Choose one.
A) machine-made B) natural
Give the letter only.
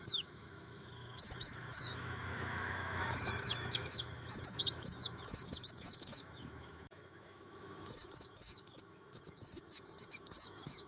A